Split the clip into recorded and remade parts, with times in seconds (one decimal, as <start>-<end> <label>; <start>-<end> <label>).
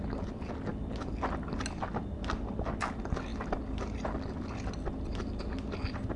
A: 0.0-6.2 recorded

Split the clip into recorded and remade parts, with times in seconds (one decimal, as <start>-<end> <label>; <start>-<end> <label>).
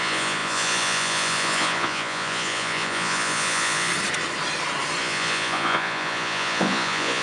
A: 0.0-3.9 remade; 3.9-5.0 recorded; 5.0-7.2 remade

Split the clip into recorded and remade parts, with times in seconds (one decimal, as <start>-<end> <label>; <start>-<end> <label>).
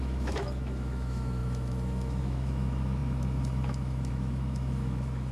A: 0.0-5.3 remade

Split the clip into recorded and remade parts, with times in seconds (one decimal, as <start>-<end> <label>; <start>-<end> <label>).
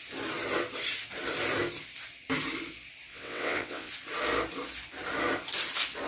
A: 0.0-3.1 recorded; 3.1-3.9 remade; 3.9-6.1 recorded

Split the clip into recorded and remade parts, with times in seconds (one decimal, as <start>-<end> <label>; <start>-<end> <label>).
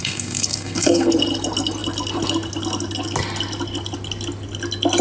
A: 0.0-1.1 remade; 1.1-5.0 recorded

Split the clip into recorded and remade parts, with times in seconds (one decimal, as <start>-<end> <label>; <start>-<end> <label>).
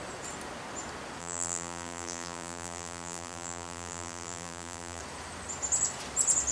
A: 0.0-1.2 recorded; 1.2-5.0 remade; 5.0-6.5 recorded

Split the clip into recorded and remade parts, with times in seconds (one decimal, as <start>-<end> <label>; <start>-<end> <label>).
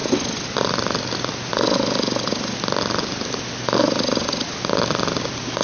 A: 0.0-5.6 recorded